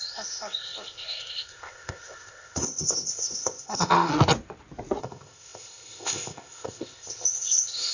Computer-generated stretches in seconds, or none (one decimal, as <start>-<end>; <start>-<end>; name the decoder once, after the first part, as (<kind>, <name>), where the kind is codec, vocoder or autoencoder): 0.0-4.1 (codec, ZipCodec); 5.0-7.9